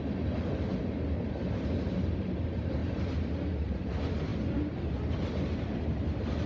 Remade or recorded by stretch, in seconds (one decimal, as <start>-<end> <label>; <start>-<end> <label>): 0.0-6.5 recorded